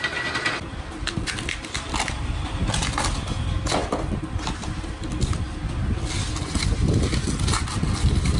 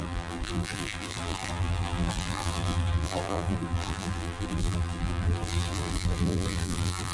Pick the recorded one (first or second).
first